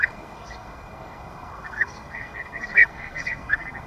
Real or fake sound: fake